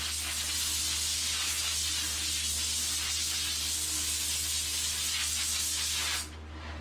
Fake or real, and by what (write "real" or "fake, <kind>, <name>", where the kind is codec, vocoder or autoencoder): real